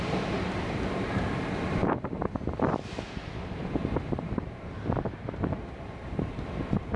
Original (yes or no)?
no